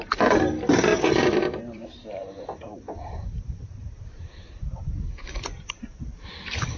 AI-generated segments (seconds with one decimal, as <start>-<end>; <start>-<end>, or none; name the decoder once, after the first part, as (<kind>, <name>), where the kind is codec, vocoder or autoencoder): 0.9-5.0 (vocoder, BigVGAN v2)